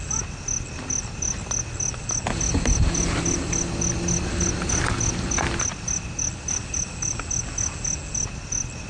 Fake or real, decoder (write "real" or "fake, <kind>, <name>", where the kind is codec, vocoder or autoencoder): real